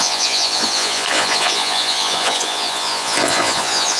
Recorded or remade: remade